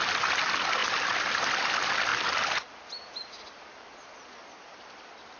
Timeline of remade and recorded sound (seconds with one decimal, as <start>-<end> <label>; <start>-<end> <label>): 0.0-5.4 recorded